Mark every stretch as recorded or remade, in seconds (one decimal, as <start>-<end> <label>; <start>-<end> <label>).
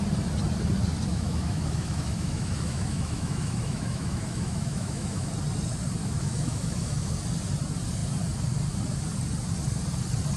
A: 0.0-1.1 recorded; 1.1-5.3 remade; 5.3-6.0 recorded; 6.0-7.1 remade; 7.1-10.4 recorded